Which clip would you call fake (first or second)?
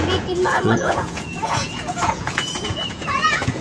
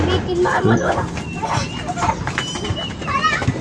first